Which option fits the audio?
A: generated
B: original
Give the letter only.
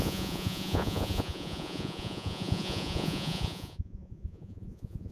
A